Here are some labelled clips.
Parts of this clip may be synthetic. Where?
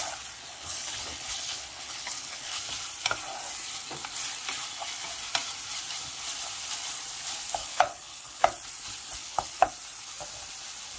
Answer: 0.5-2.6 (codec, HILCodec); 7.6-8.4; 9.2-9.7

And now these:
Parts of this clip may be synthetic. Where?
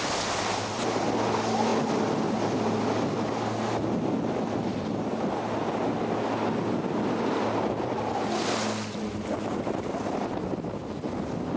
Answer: none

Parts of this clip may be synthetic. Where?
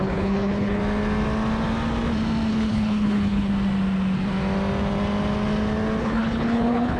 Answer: 0.0-0.8 (codec, HILCodec); 2.5-3.5; 6.0-7.0